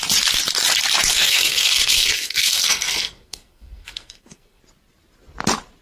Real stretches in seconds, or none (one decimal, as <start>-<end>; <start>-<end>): 0.0-1.1; 4.6-5.8